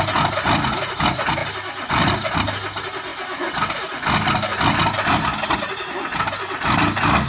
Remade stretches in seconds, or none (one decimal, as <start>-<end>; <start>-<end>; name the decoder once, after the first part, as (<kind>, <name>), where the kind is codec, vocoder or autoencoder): 1.4-1.9 (vocoder, BigVGAN v2); 4.5-5.2